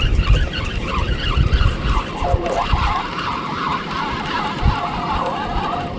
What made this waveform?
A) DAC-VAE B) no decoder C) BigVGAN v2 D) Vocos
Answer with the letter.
B